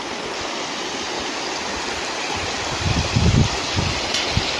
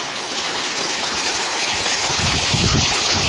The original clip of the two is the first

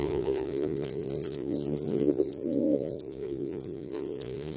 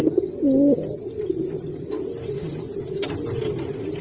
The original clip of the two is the second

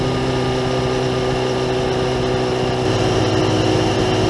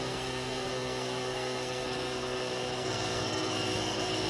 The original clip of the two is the first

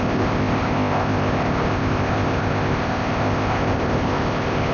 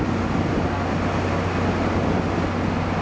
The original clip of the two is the second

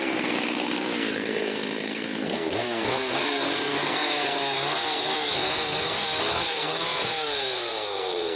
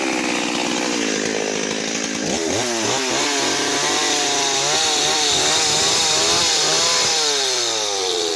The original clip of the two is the second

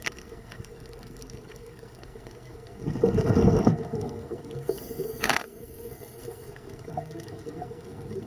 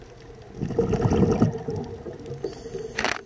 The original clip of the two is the second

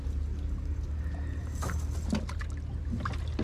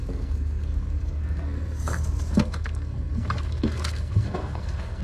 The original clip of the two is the first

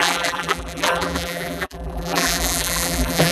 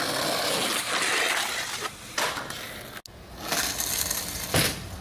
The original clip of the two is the second